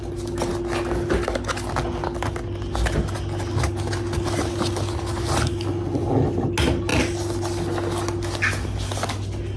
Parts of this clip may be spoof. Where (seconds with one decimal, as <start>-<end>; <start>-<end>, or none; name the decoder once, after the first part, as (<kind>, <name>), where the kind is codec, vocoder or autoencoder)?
none